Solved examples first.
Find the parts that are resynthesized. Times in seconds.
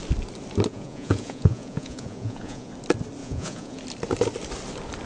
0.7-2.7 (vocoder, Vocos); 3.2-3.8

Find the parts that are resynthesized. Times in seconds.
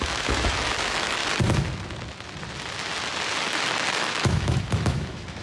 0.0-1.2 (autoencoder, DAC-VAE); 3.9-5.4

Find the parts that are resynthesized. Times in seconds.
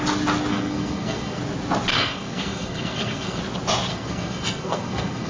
0.5-1.4 (codec, SNAC); 1.9-3.4; 3.9-5.3